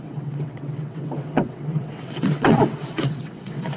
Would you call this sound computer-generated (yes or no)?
yes